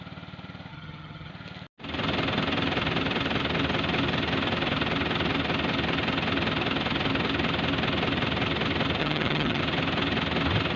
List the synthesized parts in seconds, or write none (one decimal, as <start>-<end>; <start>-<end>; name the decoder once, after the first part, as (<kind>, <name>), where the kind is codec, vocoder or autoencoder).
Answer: 0.7-1.3 (vocoder, HiFi-GAN); 9.0-9.6